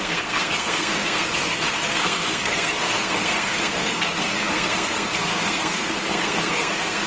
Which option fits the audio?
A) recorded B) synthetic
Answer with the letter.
B